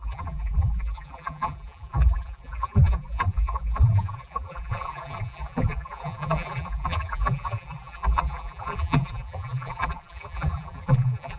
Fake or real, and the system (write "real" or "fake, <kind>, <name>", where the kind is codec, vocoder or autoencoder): fake, vocoder, BigVGAN v2